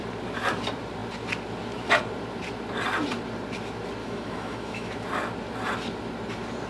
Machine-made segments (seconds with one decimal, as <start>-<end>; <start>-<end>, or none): 4.0-4.9